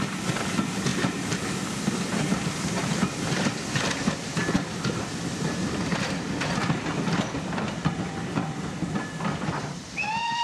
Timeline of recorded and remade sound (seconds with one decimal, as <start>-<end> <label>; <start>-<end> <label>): 0.0-0.9 remade; 0.9-3.4 recorded; 3.4-4.4 remade; 4.4-5.8 recorded; 5.8-10.4 remade